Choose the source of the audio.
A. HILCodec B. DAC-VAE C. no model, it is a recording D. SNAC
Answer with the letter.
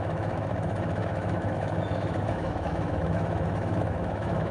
B